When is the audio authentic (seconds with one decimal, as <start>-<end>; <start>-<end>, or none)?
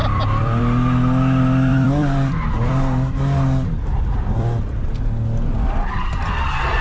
0.6-1.7; 4.6-6.8